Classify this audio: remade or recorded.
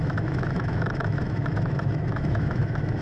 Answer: remade